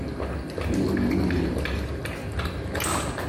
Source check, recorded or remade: recorded